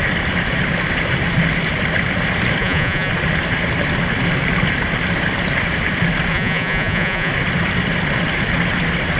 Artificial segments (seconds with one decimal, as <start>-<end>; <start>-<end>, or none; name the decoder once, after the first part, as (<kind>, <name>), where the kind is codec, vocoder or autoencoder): 2.6-3.1 (vocoder, Vocos); 6.3-7.3